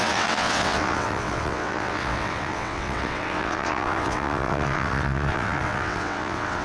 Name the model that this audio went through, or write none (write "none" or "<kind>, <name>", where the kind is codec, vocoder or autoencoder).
vocoder, WaveNeXt